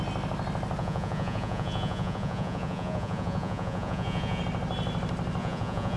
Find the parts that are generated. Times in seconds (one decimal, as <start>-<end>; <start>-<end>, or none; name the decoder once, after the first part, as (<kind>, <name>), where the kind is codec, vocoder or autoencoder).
0.8-4.4 (vocoder, Vocos); 5.4-6.0